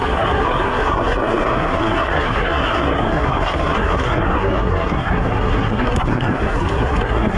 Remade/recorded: remade